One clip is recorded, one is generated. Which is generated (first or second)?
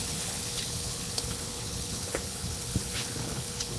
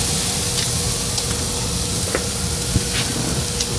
first